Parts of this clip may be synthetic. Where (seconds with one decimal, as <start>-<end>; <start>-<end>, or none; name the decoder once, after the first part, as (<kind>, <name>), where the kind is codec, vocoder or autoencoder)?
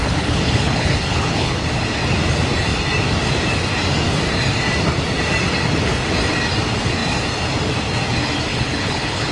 0.0-1.6 (codec, HILCodec); 8.5-9.3